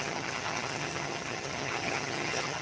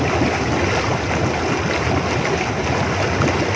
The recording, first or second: second